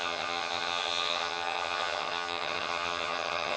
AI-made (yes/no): yes